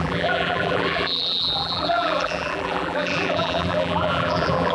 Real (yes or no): no